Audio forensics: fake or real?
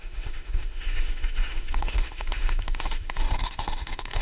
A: fake